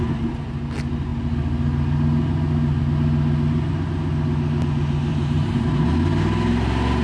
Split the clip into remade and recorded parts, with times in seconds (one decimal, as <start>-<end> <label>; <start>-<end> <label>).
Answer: 0.0-5.1 recorded; 5.1-5.8 remade; 5.8-7.0 recorded